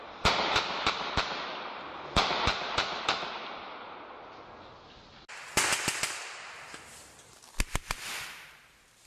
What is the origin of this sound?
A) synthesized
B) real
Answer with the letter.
B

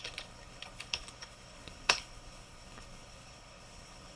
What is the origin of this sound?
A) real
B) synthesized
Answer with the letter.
B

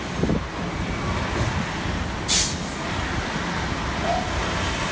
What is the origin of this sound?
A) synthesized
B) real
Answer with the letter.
B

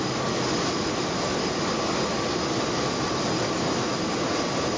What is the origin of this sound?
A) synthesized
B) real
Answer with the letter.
B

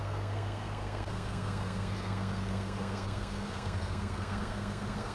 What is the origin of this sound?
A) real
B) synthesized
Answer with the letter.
B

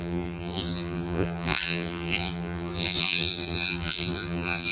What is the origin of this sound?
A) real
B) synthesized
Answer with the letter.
B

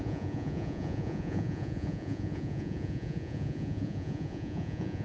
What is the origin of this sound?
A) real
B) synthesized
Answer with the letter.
B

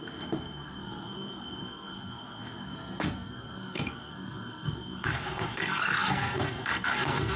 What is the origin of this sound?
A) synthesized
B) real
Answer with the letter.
A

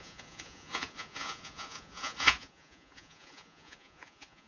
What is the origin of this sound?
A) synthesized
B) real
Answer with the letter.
A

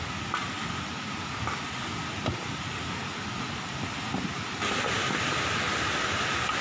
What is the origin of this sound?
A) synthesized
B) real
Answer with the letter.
B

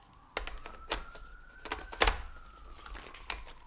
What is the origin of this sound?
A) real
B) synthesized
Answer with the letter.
A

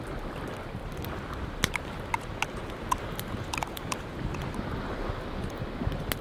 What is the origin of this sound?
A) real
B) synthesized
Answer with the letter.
A